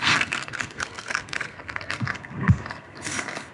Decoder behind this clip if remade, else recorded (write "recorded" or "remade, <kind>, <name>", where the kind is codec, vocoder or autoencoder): remade, codec, SNAC